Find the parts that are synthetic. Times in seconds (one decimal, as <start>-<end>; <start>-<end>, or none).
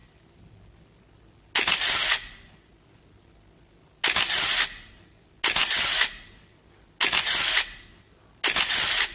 none